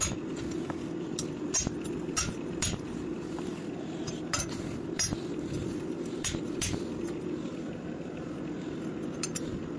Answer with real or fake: real